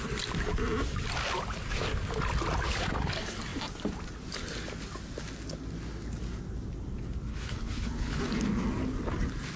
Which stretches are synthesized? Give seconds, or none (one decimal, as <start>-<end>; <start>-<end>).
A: 7.3-8.2